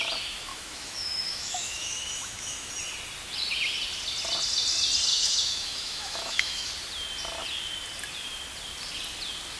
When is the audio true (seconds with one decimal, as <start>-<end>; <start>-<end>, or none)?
0.0-0.5; 2.7-5.1; 6.7-9.6